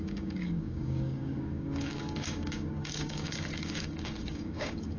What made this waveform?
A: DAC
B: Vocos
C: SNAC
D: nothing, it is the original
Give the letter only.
A